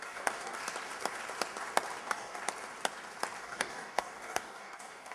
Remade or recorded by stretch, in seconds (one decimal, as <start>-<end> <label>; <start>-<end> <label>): 0.0-0.6 remade; 0.6-2.0 recorded; 2.0-2.4 remade; 2.4-3.4 recorded; 3.4-5.1 remade